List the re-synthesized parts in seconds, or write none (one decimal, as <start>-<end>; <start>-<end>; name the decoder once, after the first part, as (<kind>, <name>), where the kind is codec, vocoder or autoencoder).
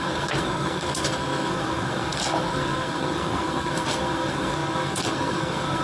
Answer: 0.0-5.8 (codec, SNAC)